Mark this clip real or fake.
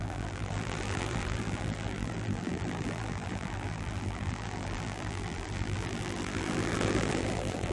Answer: fake